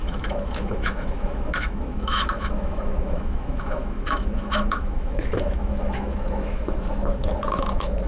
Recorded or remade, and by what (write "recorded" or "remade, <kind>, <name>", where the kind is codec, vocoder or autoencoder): remade, autoencoder, DAC-VAE